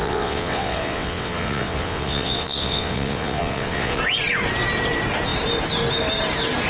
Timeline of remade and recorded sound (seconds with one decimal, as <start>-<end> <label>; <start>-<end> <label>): 0.0-4.0 remade; 4.0-6.7 recorded